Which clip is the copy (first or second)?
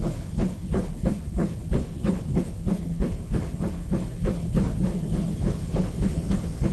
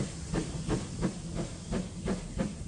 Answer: first